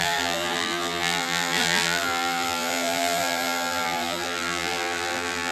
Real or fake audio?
fake